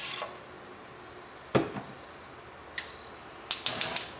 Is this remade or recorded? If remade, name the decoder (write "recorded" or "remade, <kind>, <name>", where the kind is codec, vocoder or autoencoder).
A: recorded